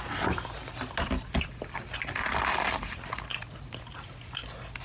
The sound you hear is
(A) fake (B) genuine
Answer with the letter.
B